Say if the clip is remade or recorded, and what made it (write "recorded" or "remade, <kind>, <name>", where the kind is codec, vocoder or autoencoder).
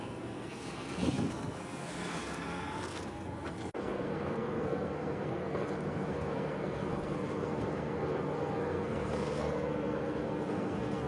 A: remade, codec, SNAC